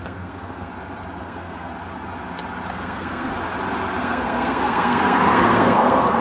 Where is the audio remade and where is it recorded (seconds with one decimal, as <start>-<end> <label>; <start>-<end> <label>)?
0.0-0.7 remade; 0.7-1.2 recorded; 1.2-1.7 remade; 1.7-2.7 recorded; 2.7-3.3 remade; 3.3-4.0 recorded; 4.0-6.2 remade